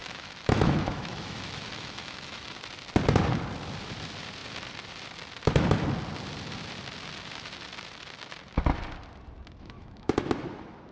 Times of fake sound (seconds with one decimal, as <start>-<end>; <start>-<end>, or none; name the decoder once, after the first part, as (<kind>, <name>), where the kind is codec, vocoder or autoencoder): 0.0-2.5 (autoencoder, DAC-VAE); 9.6-10.1